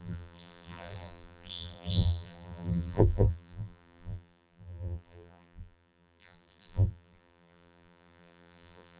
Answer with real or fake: fake